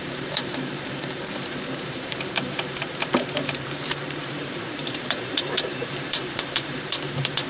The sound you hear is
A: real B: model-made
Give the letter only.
B